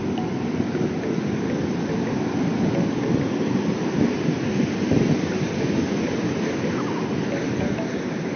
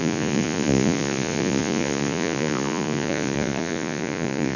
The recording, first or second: first